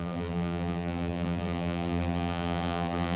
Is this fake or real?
fake